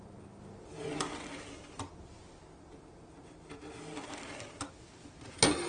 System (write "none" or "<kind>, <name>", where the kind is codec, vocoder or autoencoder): none